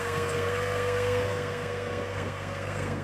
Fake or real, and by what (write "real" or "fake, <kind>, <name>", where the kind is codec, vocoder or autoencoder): fake, codec, SNAC